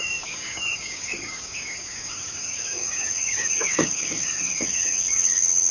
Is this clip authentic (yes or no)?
no